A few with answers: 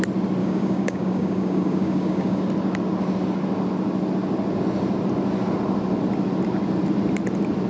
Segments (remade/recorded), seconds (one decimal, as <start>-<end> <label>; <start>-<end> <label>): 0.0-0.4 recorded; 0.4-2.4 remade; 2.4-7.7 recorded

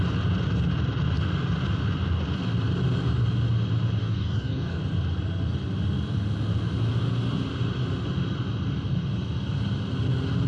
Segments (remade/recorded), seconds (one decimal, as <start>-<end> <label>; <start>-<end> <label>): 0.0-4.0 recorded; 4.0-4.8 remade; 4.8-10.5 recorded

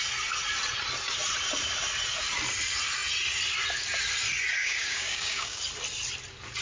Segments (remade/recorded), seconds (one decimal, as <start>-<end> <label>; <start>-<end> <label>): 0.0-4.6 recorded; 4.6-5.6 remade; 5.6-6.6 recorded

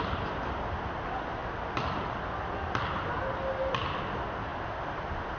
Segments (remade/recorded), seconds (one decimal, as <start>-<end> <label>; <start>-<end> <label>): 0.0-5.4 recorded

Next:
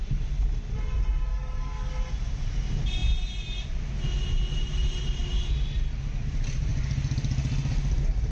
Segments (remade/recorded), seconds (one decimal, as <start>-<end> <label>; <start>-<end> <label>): 0.0-1.3 recorded; 1.3-1.9 remade; 1.9-8.3 recorded

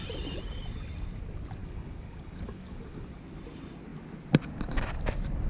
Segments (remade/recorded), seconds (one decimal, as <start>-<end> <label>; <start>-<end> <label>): 0.0-1.6 recorded; 1.6-3.2 remade; 3.2-5.5 recorded

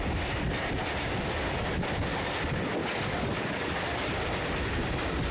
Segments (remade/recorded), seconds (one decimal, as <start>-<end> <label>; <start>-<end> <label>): 0.0-2.8 recorded; 2.8-3.8 remade; 3.8-5.3 recorded